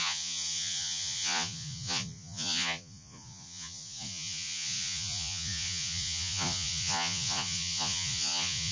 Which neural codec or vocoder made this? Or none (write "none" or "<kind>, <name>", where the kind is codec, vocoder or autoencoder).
vocoder, Vocos